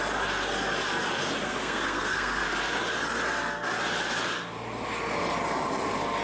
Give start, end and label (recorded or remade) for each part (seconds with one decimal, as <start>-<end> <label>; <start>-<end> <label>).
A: 0.0-1.4 recorded; 1.4-2.4 remade; 2.4-6.2 recorded